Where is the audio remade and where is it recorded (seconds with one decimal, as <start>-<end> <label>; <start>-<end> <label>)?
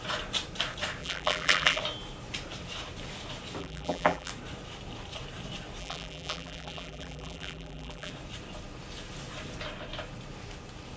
0.0-1.0 recorded; 1.0-1.8 remade; 1.8-3.6 recorded; 3.6-4.3 remade; 4.3-5.8 recorded; 5.8-8.1 remade; 8.1-11.0 recorded